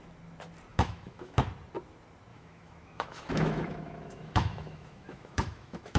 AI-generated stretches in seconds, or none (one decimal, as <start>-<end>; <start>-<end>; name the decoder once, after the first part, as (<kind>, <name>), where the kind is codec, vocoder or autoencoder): 0.7-1.4 (autoencoder, DAC-VAE); 2.3-6.0

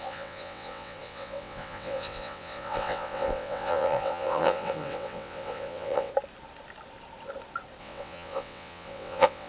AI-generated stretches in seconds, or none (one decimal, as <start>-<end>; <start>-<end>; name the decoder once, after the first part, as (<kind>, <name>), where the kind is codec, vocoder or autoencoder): 0.0-6.1 (vocoder, WaveNeXt); 7.8-9.5

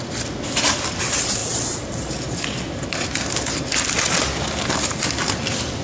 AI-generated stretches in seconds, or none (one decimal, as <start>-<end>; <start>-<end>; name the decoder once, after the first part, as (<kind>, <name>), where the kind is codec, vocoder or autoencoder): none

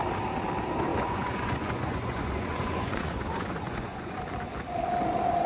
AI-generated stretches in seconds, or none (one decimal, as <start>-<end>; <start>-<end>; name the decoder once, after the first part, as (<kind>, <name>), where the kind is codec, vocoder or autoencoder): 0.9-4.2 (vocoder, Vocos)